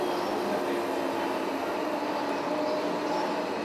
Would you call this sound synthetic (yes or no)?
no